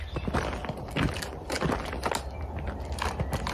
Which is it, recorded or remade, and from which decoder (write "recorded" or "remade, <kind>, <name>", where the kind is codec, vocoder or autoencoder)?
recorded